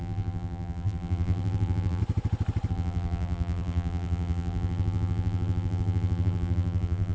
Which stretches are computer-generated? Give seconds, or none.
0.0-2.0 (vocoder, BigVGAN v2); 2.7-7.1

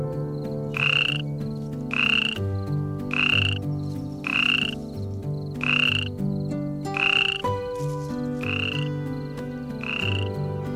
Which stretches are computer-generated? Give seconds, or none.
none

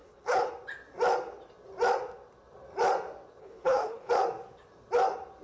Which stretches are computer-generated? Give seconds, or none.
0.0-0.5 (codec, HILCodec); 3.4-4.1

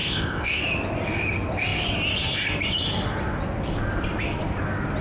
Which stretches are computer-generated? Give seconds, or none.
0.0-0.6 (codec, ZipCodec)

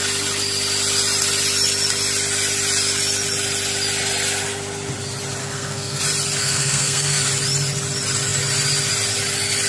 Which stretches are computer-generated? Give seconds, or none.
5.4-6.0 (codec, SNAC); 6.4-7.2